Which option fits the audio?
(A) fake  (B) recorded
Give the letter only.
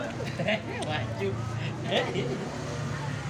B